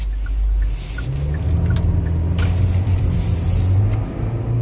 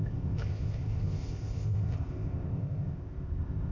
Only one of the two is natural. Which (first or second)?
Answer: first